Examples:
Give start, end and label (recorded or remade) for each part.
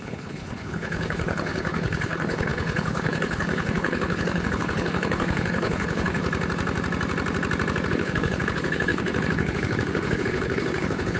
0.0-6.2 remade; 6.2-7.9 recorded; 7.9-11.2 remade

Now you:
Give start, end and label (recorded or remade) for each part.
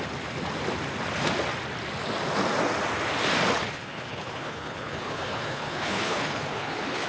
0.0-3.6 recorded; 3.6-7.1 remade